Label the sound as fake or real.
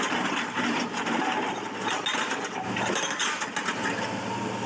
real